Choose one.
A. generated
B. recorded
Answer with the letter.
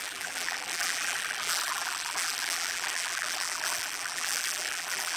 A